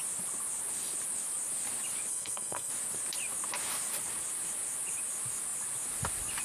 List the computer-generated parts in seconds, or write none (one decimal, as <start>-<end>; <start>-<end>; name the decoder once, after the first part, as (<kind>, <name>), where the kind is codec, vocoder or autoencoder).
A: 2.1-2.7 (codec, SNAC)